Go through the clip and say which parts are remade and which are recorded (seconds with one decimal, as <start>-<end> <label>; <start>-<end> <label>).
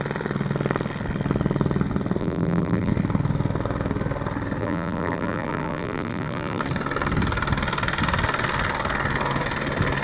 0.0-2.2 recorded; 2.2-2.9 remade; 2.9-4.6 recorded; 4.6-6.6 remade; 6.6-10.0 recorded